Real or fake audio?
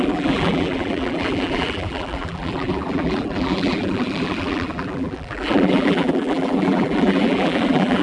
fake